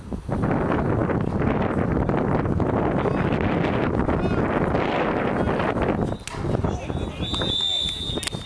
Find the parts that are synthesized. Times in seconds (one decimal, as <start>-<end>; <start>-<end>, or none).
none